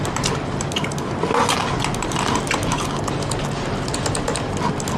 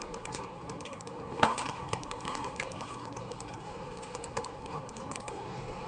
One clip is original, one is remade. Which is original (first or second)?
first